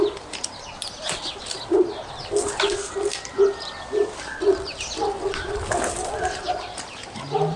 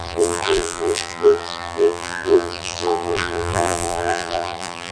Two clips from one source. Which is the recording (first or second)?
first